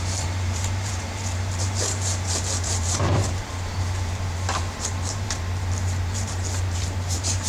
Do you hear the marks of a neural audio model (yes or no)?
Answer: yes